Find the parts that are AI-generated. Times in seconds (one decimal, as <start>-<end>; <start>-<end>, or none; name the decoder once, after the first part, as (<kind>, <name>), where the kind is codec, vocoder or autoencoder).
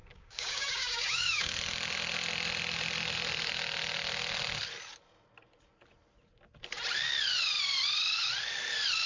0.0-1.5 (codec, DAC)